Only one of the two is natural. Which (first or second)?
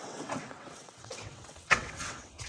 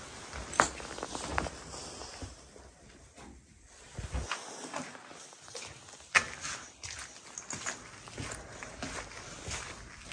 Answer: second